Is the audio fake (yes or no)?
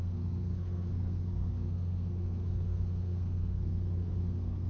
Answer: yes